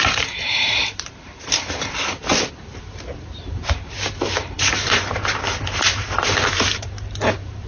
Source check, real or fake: fake